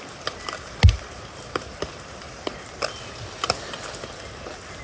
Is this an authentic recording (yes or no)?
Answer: yes